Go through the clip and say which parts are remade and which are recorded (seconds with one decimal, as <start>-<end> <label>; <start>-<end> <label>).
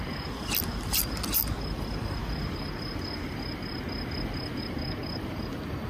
0.0-5.9 recorded